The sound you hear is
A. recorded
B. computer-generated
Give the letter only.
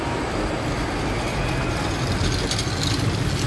A